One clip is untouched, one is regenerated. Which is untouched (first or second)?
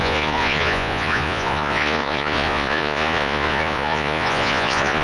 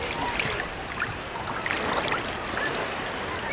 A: second